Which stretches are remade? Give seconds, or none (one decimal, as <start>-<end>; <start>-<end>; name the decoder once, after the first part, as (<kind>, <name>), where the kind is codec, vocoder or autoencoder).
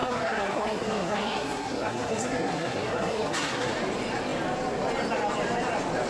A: 0.0-3.7 (codec, SNAC)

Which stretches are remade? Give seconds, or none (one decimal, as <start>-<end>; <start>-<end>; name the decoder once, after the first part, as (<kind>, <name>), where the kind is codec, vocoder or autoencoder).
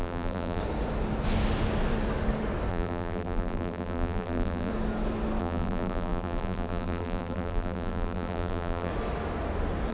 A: 0.0-0.6 (vocoder, BigVGAN v2); 2.7-4.7; 5.4-8.9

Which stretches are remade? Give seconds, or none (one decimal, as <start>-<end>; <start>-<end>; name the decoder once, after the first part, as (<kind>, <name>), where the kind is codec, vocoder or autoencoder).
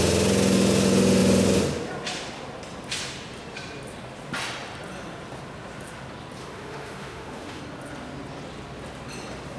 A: 6.4-7.6 (autoencoder, DAC-VAE)